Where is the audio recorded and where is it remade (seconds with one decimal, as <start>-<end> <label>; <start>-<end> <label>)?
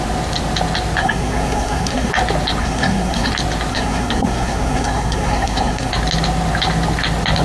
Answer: 0.0-1.0 recorded; 1.0-2.1 remade; 2.1-2.6 recorded; 2.6-3.3 remade; 3.3-3.7 recorded; 3.7-5.9 remade; 5.9-7.4 recorded